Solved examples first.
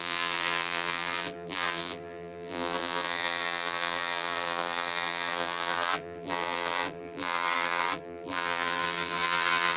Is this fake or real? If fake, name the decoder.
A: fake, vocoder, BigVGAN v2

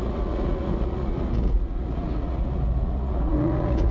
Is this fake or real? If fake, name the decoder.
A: fake, vocoder, Vocos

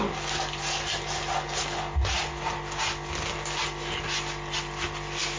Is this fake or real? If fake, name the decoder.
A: real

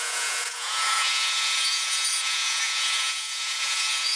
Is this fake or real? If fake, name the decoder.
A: fake, vocoder, Vocos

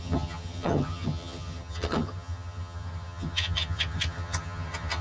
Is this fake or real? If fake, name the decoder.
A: fake, vocoder, HiFi-GAN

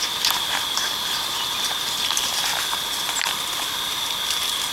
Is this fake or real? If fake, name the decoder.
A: real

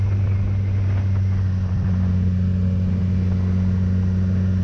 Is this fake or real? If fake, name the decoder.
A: real